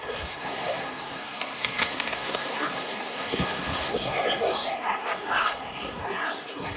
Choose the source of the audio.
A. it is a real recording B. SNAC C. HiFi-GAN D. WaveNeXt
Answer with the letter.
B